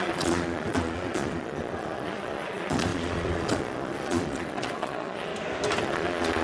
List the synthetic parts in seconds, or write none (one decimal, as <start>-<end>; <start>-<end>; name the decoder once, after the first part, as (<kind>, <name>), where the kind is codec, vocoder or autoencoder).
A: 0.0-5.3 (vocoder, Vocos); 5.8-6.4